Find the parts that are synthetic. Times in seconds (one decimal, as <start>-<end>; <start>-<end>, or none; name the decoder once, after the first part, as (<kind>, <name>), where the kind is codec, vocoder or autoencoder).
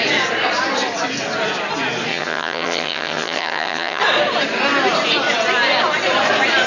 2.1-4.0 (vocoder, HiFi-GAN)